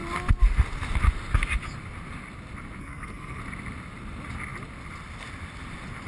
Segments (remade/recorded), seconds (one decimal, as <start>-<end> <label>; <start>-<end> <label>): 0.0-2.8 recorded; 2.8-3.4 remade; 3.4-6.1 recorded